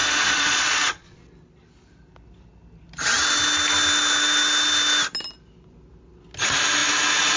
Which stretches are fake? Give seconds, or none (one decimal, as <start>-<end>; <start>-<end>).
0.0-1.2